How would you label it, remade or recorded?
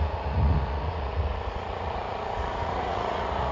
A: remade